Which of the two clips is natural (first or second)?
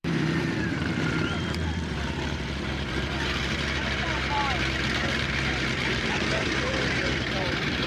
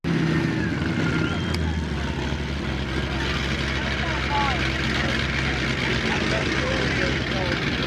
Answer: second